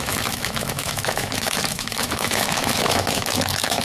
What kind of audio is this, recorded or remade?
remade